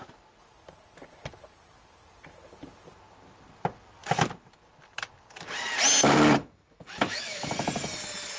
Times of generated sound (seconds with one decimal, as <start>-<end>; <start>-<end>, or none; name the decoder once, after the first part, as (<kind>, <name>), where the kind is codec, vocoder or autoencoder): 6.4-7.5 (autoencoder, DAC-VAE)